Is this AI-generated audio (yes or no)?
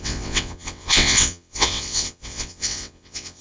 yes